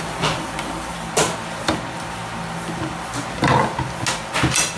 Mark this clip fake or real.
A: real